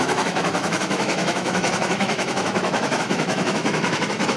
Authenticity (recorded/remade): remade